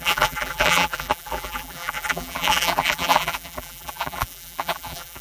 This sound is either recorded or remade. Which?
remade